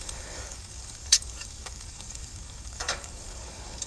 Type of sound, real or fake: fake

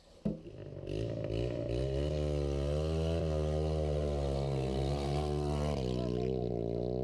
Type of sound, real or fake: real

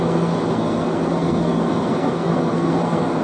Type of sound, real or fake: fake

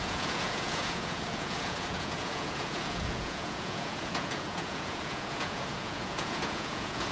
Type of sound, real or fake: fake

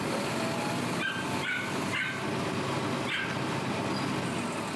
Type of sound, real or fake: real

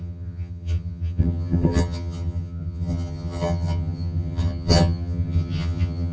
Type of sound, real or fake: fake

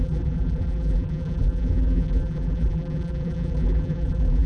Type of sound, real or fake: fake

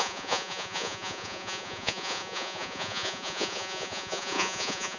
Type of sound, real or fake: fake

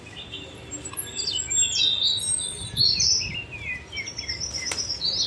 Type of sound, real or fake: real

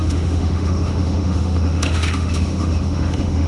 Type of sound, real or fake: fake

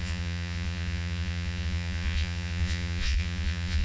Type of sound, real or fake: fake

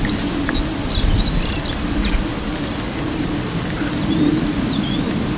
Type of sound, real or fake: real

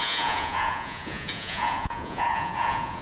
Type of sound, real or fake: fake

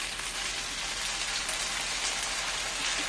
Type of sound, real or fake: real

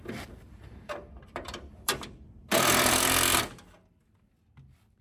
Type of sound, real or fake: fake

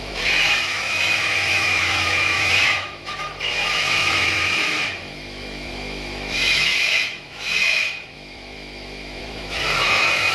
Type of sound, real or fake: fake